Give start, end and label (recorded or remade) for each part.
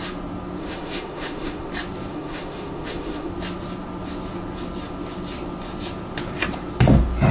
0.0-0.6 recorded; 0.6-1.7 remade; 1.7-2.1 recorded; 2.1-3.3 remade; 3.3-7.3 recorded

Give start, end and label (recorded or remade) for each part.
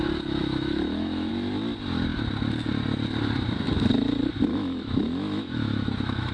0.0-0.4 recorded; 0.4-1.3 remade; 1.3-4.5 recorded; 4.5-6.3 remade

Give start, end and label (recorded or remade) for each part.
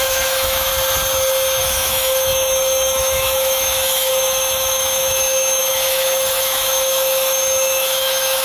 0.0-0.7 remade; 0.7-1.6 recorded; 1.6-8.4 remade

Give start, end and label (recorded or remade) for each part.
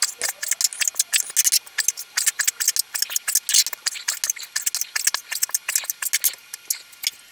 0.0-7.3 recorded